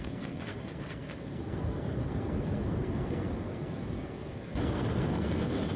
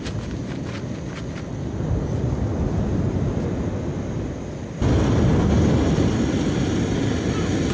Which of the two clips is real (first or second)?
second